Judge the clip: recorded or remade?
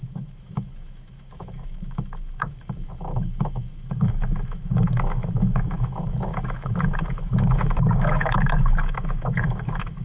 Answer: remade